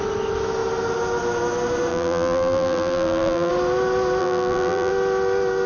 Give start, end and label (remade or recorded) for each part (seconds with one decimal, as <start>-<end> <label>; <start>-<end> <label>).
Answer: 0.0-1.9 recorded; 1.9-3.5 remade; 3.5-4.2 recorded; 4.2-4.9 remade; 4.9-5.7 recorded